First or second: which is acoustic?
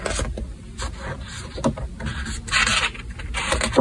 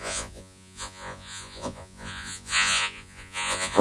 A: first